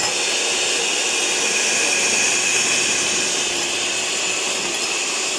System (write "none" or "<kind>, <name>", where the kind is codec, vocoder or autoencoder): none